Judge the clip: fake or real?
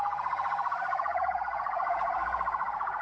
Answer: real